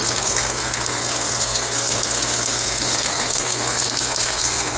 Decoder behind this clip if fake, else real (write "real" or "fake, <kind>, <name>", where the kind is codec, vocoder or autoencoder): fake, codec, SNAC